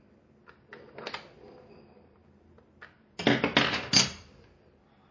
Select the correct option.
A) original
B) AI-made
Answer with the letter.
A